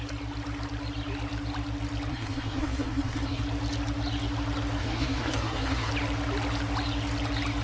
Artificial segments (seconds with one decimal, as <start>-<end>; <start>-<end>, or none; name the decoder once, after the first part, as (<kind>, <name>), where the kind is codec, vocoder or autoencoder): 2.1-3.4 (codec, SNAC); 4.8-5.9